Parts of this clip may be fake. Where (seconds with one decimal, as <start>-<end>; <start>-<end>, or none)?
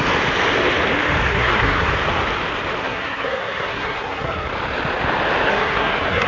1.3-1.9; 2.8-4.5; 5.5-6.3